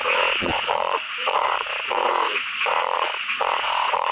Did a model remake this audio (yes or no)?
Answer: yes